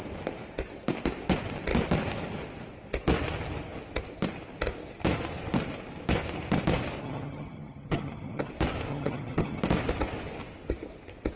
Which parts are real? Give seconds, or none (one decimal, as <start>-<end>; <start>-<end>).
0.0-7.0; 8.5-8.9; 9.6-11.4